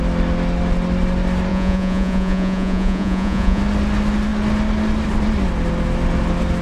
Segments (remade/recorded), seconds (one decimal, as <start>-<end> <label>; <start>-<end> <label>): 0.0-1.5 recorded; 1.5-3.6 remade; 3.6-6.6 recorded